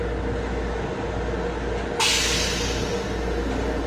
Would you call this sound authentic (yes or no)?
yes